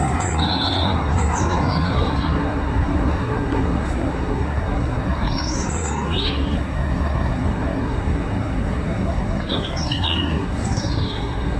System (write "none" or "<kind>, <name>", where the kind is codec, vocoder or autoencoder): codec, SNAC